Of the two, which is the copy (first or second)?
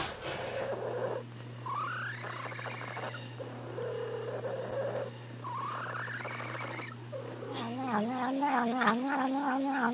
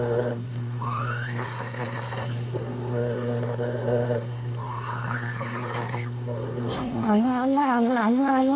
second